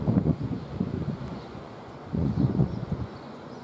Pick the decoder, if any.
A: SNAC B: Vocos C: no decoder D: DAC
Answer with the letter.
B